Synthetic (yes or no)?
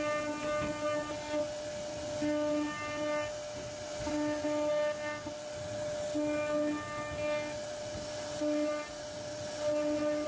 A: no